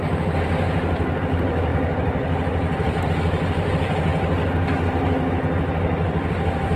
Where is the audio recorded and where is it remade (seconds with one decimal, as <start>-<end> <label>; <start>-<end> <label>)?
0.0-4.1 remade; 4.1-6.3 recorded; 6.3-6.8 remade

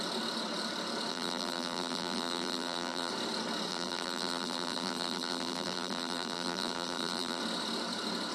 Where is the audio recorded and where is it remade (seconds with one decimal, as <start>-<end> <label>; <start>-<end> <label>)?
0.0-1.1 recorded; 1.1-3.1 remade; 3.1-3.7 recorded; 3.7-7.4 remade; 7.4-8.3 recorded

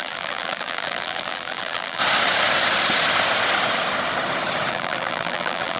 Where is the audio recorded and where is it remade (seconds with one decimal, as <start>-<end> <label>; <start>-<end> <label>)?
0.0-2.0 remade; 2.0-4.7 recorded; 4.7-5.8 remade

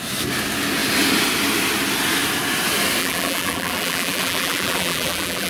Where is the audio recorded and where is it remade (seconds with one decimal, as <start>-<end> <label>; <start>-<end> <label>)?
0.0-3.0 recorded; 3.0-5.5 remade